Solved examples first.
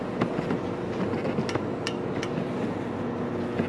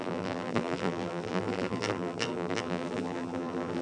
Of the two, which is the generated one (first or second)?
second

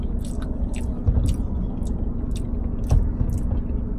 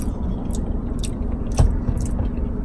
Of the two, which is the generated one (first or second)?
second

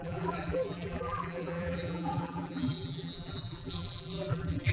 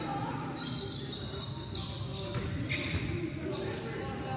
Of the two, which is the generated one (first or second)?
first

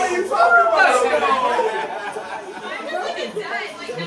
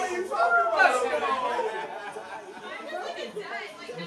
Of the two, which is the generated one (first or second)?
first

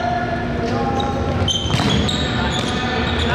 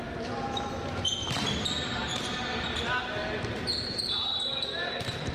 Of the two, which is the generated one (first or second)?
second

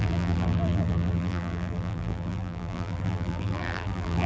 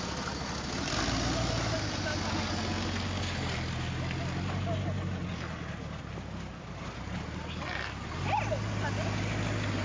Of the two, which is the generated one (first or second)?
first